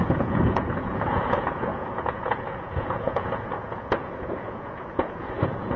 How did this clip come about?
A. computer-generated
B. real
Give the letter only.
A